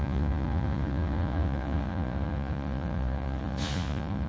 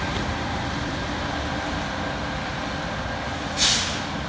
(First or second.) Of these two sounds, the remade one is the first